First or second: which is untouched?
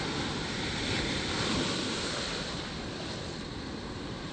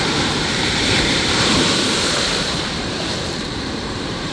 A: first